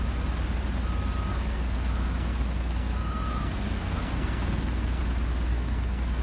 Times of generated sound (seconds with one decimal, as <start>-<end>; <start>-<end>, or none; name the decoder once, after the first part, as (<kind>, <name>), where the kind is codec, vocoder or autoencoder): 1.3-5.0 (codec, SNAC); 5.5-6.2